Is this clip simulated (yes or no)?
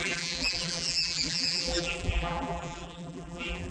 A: yes